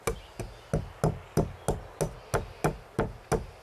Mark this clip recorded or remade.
recorded